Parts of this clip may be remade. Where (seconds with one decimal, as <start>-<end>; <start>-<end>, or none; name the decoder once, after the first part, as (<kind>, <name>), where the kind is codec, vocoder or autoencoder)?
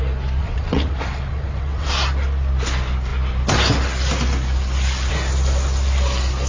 0.4-1.9 (vocoder, WaveNeXt)